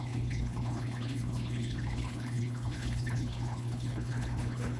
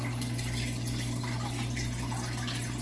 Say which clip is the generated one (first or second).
first